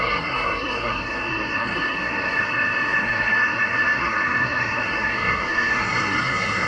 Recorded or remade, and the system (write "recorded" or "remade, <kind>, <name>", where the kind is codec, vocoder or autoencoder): remade, codec, SNAC